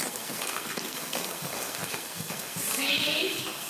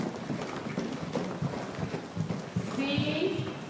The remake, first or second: first